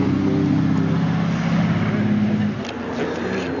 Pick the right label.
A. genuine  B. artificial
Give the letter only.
A